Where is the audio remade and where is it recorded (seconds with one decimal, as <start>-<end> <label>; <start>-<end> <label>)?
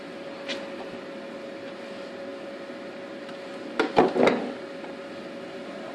0.0-5.9 recorded